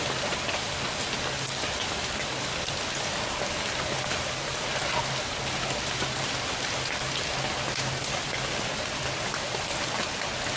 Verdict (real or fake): real